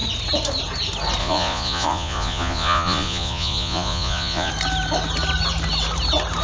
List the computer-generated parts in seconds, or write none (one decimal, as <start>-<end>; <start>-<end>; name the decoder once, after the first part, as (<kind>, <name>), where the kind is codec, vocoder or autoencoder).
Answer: 1.2-4.5 (vocoder, Vocos)